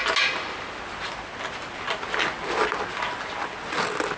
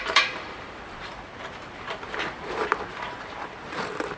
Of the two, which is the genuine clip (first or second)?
first